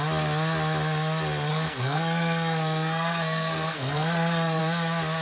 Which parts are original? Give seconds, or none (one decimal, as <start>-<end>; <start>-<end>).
0.0-1.5; 4.6-5.2